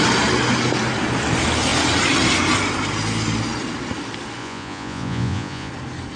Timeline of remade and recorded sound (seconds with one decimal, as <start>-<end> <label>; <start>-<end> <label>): 0.0-4.4 recorded; 4.4-5.7 remade; 5.7-6.2 recorded